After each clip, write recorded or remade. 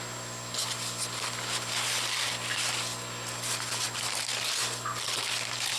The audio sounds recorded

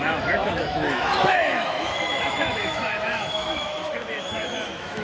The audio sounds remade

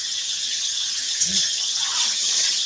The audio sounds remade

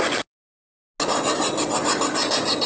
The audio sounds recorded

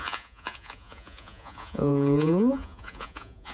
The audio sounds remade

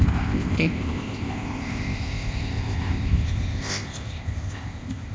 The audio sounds remade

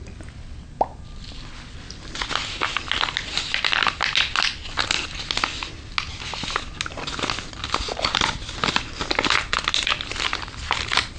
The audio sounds recorded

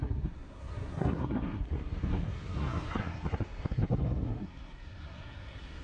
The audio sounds remade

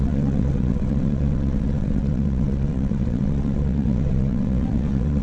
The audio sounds remade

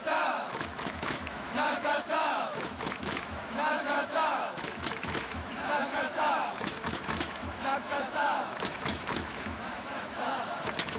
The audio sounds remade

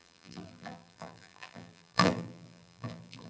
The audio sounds remade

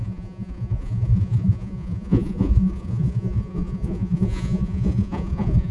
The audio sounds remade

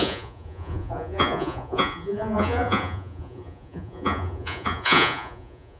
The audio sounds remade